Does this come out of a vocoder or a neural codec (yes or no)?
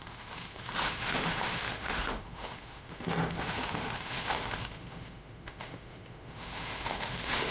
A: yes